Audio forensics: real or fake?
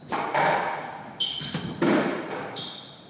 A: real